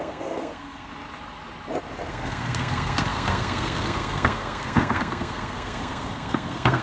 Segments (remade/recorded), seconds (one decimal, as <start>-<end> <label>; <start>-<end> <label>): 0.0-0.9 remade; 0.9-2.1 recorded; 2.1-6.8 remade